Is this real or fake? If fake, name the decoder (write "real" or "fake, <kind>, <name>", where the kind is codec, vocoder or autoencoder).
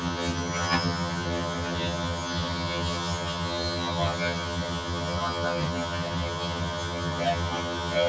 fake, vocoder, HiFi-GAN